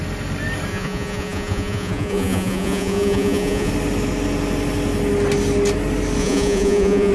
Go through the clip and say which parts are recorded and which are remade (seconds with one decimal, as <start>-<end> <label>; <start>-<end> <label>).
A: 0.0-0.7 recorded; 0.7-3.7 remade; 3.7-6.2 recorded; 6.2-7.1 remade